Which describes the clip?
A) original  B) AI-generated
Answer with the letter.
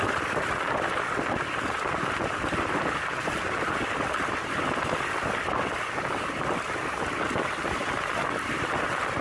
A